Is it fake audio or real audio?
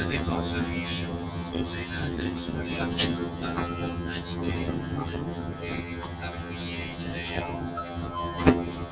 fake